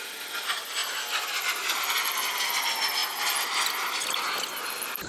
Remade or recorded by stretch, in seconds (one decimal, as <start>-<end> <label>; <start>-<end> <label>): 0.0-5.1 recorded